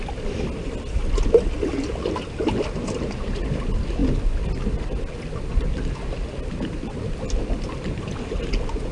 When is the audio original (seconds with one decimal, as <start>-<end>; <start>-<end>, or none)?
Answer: 0.0-8.9

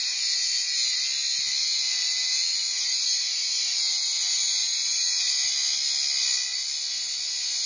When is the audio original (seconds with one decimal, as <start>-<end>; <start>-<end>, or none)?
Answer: 1.0-1.6; 5.2-7.7

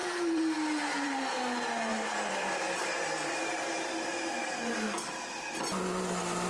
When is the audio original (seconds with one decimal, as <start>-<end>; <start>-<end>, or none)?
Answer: 1.2-1.9; 5.7-6.5

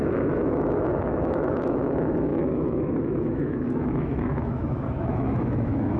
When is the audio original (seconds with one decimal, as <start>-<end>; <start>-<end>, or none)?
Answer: none

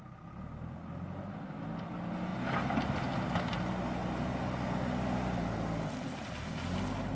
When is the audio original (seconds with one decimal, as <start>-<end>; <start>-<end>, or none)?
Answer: 0.0-7.2

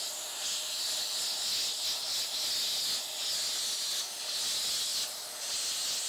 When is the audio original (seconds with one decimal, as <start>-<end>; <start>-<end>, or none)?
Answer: 0.0-6.1

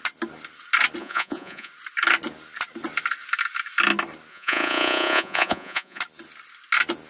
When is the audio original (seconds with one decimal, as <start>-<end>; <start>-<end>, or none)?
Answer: 0.0-1.0; 1.7-4.3; 6.0-7.1

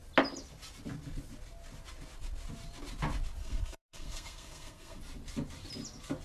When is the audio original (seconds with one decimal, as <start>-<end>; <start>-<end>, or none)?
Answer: 0.0-3.4; 5.0-6.2